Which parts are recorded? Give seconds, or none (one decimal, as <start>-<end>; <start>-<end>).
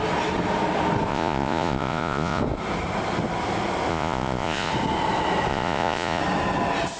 0.0-1.1; 2.4-3.9; 4.7-5.5; 6.2-7.0